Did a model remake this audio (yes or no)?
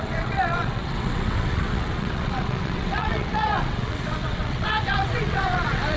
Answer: yes